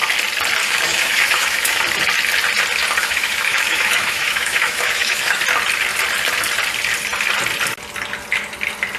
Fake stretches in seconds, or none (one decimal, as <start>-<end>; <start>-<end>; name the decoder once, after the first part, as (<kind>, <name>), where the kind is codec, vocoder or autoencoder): 0.6-1.8 (autoencoder, DAC-VAE); 3.0-5.4